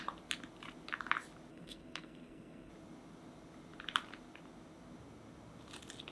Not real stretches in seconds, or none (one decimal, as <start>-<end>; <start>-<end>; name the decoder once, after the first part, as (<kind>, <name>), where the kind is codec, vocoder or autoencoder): 1.5-2.7 (codec, SNAC)

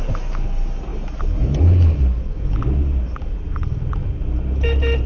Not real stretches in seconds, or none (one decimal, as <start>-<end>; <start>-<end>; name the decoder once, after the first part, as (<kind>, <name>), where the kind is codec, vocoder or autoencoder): none

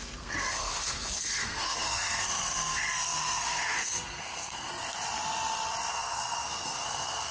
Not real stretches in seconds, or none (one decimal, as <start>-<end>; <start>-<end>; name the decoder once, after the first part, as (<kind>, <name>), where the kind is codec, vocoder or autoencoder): 0.0-4.7 (codec, SNAC); 5.9-7.3

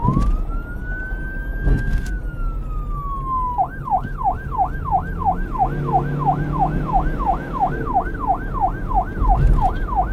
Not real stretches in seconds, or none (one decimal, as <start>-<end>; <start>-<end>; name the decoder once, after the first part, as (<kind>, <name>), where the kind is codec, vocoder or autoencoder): 1.7-2.2 (codec, SNAC)